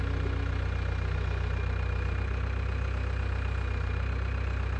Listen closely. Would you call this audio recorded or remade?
recorded